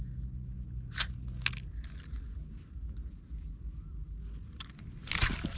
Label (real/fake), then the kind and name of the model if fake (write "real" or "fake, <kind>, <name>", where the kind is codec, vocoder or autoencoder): real